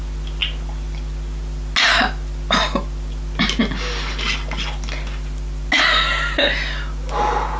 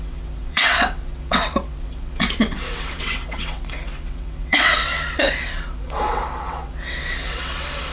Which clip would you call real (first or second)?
first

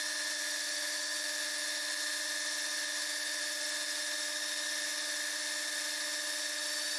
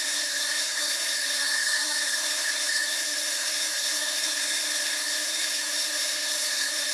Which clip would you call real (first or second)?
first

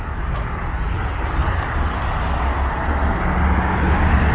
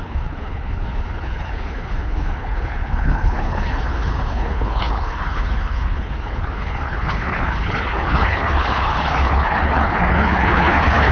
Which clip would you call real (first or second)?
first